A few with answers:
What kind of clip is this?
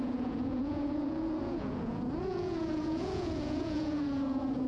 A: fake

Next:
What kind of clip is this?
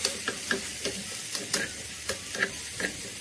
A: real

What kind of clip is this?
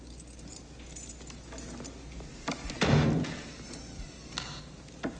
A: real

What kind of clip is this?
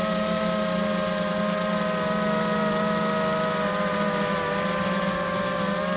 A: real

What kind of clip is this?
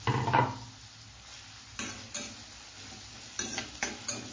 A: real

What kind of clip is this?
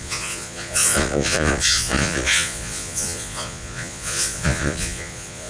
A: fake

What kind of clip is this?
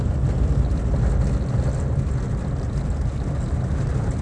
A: real